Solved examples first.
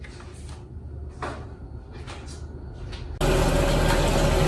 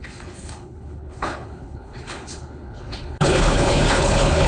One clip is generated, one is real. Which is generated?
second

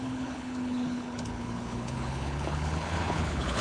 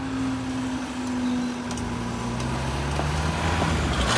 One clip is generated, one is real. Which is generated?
first